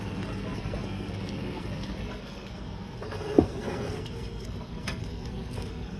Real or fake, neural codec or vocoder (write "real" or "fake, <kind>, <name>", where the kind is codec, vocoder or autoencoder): fake, codec, SNAC